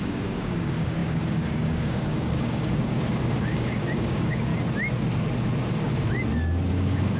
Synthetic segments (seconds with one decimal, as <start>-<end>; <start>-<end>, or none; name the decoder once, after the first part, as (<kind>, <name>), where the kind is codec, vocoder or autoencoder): 0.0-4.5 (codec, DAC); 6.7-7.2

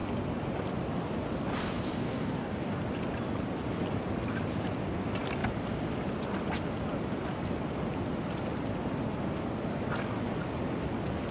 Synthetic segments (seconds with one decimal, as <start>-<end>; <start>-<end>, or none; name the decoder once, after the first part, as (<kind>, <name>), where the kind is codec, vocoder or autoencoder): 2.0-2.8 (codec, DAC)